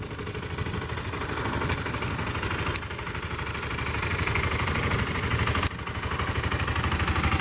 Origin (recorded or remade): recorded